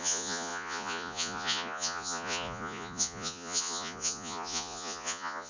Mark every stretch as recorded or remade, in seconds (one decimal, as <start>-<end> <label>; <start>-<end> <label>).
0.0-5.5 remade